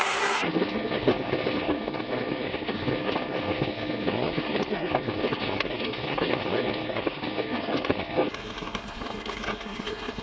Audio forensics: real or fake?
fake